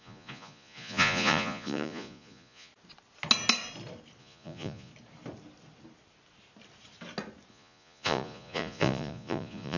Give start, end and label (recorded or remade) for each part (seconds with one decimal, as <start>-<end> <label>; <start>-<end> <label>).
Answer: 0.0-2.7 remade; 2.7-4.2 recorded; 4.2-4.9 remade; 4.9-7.5 recorded; 7.5-9.8 remade